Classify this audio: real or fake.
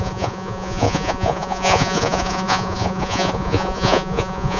fake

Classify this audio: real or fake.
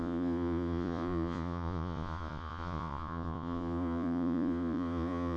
fake